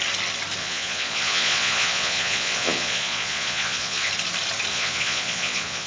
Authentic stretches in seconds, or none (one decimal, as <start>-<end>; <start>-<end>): 0.0-0.6; 4.1-4.7